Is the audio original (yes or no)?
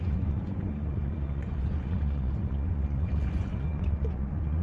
no